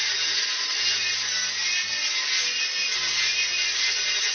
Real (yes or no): yes